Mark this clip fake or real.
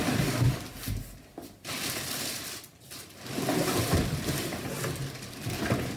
real